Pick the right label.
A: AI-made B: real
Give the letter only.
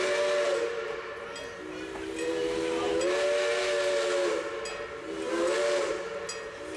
B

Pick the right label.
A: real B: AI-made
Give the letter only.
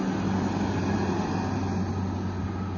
A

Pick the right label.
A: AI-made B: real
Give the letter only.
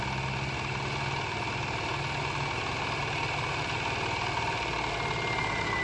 B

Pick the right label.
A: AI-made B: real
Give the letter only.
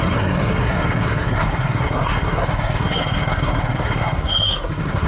A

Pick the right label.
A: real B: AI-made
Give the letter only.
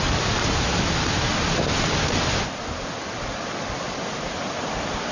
A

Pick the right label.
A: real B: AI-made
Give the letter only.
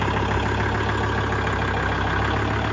A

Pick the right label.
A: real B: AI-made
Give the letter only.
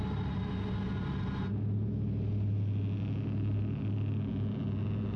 A